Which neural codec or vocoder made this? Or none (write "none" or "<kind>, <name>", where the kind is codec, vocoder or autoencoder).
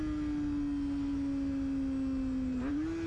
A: none